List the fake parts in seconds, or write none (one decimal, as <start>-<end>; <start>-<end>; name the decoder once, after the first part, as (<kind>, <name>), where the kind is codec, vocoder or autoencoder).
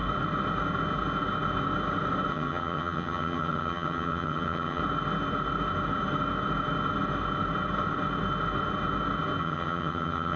2.3-4.8 (vocoder, HiFi-GAN); 9.4-10.4